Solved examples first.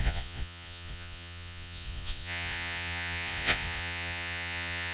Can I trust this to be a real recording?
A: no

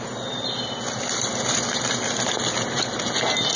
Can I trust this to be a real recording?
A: yes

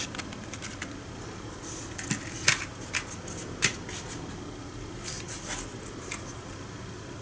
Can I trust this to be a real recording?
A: yes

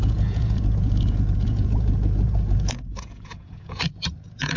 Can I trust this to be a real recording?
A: no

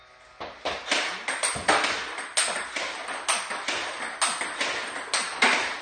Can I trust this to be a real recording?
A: yes